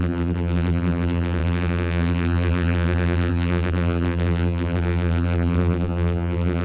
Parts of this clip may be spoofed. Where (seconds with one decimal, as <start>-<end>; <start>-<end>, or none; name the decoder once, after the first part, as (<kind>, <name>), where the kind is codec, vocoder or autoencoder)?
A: 0.0-6.6 (vocoder, BigVGAN v2)

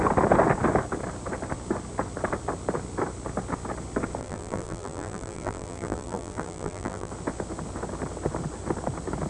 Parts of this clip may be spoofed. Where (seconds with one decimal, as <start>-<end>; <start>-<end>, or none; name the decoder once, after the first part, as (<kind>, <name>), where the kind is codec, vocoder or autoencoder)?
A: 4.2-7.1 (vocoder, BigVGAN v2)